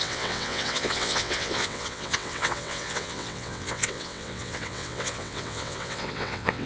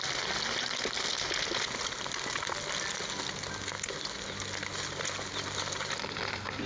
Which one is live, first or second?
second